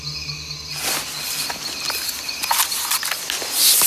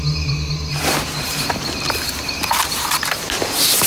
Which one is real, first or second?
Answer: first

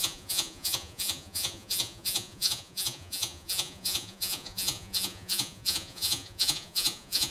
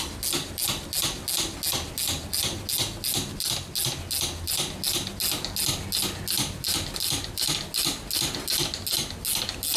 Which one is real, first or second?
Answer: second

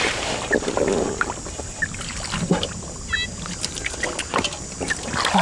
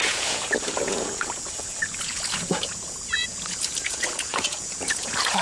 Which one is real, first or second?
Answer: first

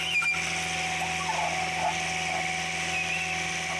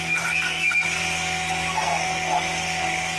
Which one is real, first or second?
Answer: first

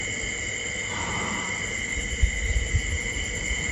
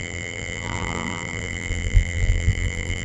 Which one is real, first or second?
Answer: first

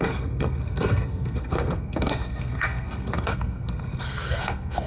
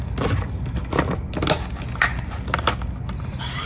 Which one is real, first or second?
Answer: second